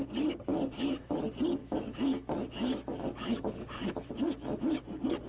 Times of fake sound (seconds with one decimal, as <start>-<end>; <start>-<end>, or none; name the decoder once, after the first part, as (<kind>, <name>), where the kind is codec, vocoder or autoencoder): 0.5-1.2 (autoencoder, DAC-VAE); 1.6-4.8